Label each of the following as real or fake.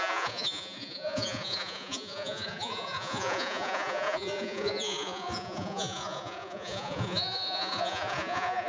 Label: fake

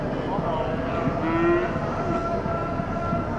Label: real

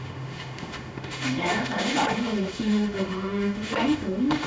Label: fake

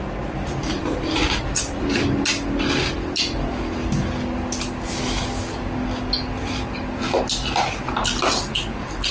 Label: real